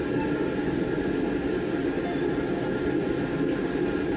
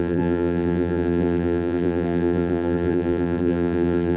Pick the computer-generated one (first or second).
second